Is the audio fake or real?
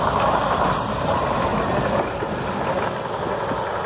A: real